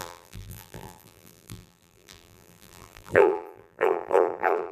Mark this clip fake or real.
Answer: fake